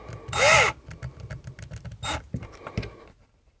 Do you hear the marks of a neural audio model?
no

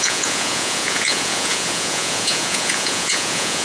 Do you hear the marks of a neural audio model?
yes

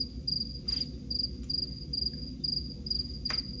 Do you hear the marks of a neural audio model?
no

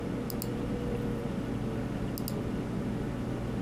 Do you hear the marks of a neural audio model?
no